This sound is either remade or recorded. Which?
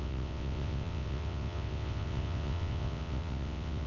remade